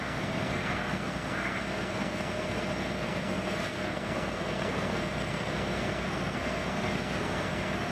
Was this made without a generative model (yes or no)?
no